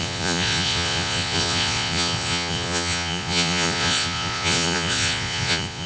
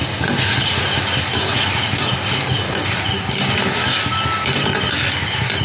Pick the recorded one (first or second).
second